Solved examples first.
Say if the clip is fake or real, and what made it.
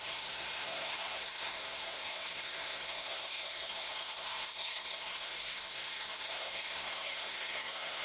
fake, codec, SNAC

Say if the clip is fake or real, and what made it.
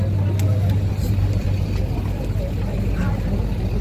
real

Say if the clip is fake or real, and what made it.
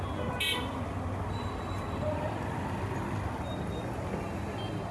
real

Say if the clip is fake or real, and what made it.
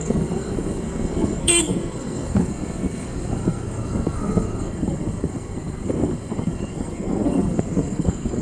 fake, codec, SNAC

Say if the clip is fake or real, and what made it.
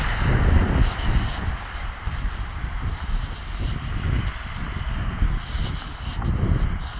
real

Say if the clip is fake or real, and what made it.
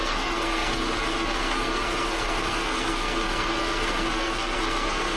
fake, codec, SNAC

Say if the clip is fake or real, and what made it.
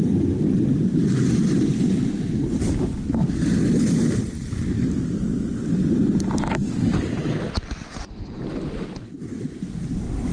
real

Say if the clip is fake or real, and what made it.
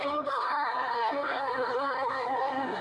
fake, codec, SNAC